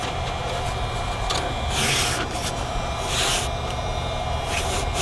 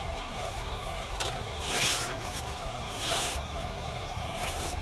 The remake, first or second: second